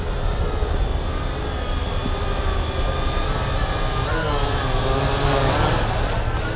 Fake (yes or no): no